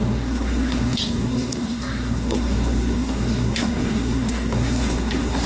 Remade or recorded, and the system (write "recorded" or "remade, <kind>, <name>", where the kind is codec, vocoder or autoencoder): remade, codec, SNAC